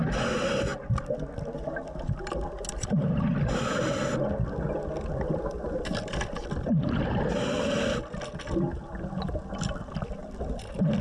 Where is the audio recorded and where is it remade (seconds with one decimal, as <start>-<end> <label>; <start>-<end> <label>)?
0.0-11.0 recorded